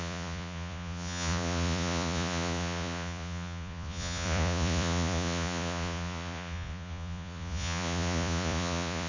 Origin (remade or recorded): remade